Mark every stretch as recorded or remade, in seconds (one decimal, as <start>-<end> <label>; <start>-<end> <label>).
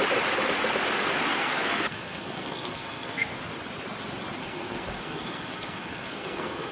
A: 0.0-1.3 recorded; 1.3-3.3 remade; 3.3-4.4 recorded; 4.4-6.7 remade